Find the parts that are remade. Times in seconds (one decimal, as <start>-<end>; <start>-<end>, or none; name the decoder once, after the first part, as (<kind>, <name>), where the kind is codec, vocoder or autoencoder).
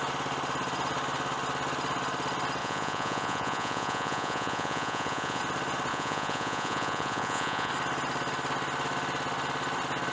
2.6-5.4 (vocoder, Vocos); 5.9-7.7